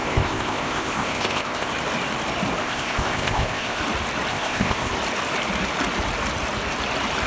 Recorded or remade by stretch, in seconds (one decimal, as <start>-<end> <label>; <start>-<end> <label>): 0.0-1.7 remade; 1.7-2.6 recorded; 2.6-3.8 remade; 3.8-4.3 recorded; 4.3-4.9 remade; 4.9-7.3 recorded